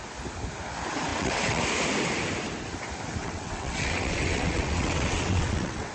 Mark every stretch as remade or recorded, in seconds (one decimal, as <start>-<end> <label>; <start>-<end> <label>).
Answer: 0.0-1.1 recorded; 1.1-1.6 remade; 1.6-3.2 recorded; 3.2-5.9 remade